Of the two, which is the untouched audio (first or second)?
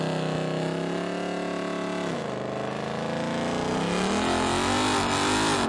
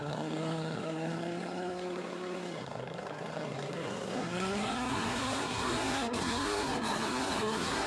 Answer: first